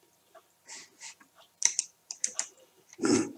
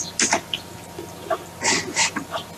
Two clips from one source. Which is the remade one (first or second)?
first